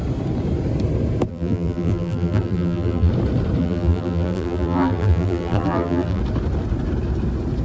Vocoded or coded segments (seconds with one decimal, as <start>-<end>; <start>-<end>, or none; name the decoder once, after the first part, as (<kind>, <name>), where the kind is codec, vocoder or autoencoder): 1.3-3.1 (vocoder, BigVGAN v2); 3.6-6.2